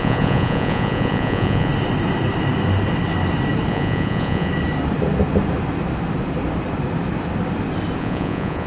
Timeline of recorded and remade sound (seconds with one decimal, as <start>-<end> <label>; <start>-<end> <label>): 0.0-1.7 remade; 1.7-3.7 recorded; 3.7-4.5 remade; 4.5-8.0 recorded; 8.0-8.7 remade